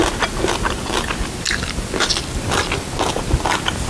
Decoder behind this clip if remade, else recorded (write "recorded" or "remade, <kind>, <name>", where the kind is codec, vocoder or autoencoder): recorded